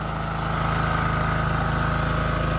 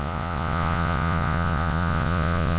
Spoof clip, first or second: second